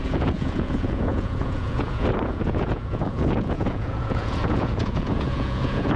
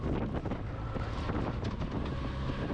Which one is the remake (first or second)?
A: first